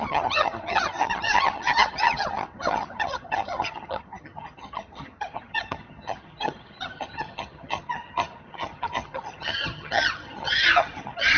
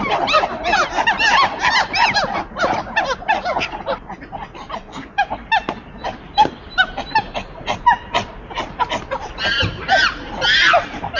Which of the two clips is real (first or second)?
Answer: second